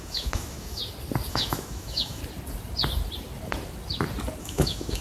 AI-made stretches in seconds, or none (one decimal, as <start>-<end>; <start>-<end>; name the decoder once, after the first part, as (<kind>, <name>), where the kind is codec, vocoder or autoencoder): 0.0-0.8 (autoencoder, DAC-VAE); 1.3-2.2; 4.4-5.0